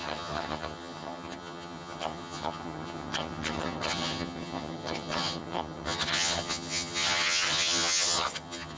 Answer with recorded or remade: remade